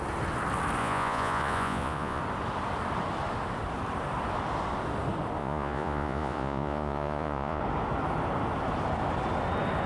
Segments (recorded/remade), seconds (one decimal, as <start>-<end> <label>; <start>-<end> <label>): 0.0-0.8 recorded; 0.8-2.2 remade; 2.2-5.4 recorded; 5.4-7.6 remade; 7.6-9.9 recorded